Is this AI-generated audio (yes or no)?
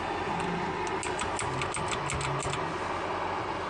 no